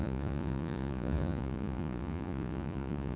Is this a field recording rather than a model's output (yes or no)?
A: no